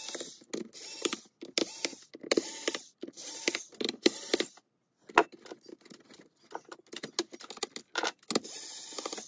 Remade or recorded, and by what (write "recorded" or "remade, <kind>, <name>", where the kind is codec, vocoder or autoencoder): recorded